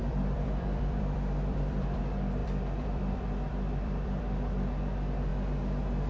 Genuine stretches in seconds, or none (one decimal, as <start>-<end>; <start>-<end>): 2.0-2.4; 4.2-6.1